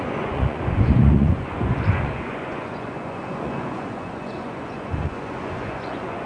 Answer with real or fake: fake